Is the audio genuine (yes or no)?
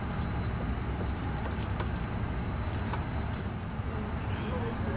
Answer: yes